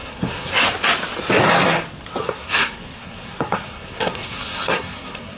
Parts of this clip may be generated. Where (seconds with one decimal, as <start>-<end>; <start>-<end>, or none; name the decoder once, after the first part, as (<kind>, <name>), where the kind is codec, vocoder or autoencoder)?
0.0-0.5 (codec, SNAC); 2.2-5.4